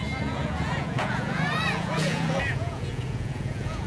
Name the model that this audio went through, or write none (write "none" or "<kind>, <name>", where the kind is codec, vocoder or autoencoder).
vocoder, Vocos